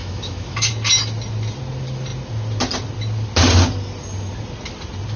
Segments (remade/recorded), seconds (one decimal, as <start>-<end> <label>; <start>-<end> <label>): 0.0-0.7 remade; 0.7-5.2 recorded